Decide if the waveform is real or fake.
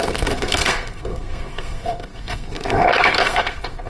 fake